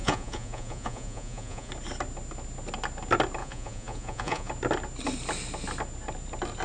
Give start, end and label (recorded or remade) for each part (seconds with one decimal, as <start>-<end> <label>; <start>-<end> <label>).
0.0-1.7 remade; 1.7-3.4 recorded; 3.4-4.5 remade; 4.5-6.6 recorded